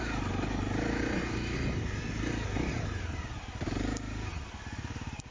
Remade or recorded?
recorded